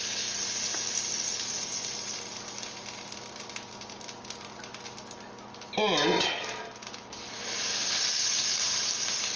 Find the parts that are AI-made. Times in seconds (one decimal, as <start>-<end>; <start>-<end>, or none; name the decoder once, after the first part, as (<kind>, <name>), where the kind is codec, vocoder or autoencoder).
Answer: none